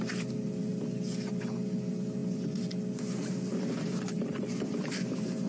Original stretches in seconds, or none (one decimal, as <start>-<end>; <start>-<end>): 0.0-5.5